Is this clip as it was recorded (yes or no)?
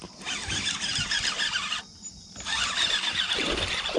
yes